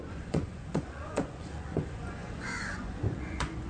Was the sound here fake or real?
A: fake